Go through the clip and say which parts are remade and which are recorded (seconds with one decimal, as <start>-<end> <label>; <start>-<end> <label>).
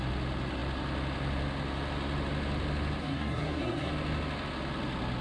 0.0-3.0 recorded; 3.0-3.9 remade; 3.9-5.2 recorded